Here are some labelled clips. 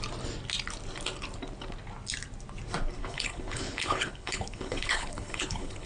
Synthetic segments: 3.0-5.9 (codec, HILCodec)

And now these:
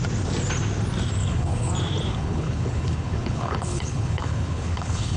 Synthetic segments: 1.2-1.7 (codec, HILCodec); 2.1-5.2

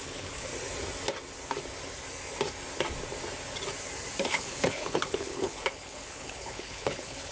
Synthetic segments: 0.0-0.5 (codec, HILCodec); 4.3-7.3

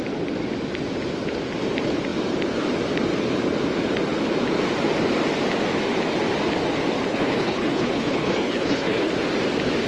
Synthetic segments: 7.1-9.1 (codec, HILCodec)

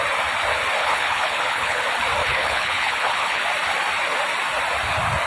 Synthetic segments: 0.8-1.8 (codec, HILCodec); 2.2-3.4